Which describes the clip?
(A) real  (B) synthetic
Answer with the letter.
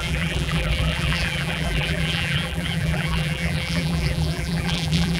B